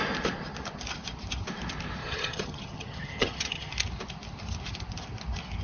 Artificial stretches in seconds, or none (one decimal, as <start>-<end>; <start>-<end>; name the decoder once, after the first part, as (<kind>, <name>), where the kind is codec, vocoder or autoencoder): 2.0-3.7 (vocoder, HiFi-GAN)